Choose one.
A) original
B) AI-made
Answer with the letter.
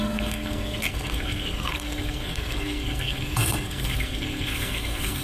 B